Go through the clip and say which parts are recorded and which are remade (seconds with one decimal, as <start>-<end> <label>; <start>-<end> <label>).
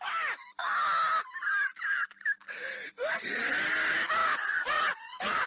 0.0-4.2 recorded; 4.2-5.5 remade